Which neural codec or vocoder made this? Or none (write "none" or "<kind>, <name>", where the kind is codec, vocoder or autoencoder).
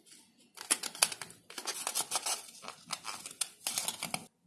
none